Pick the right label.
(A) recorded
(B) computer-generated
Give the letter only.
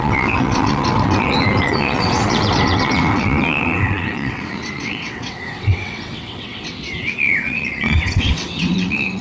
B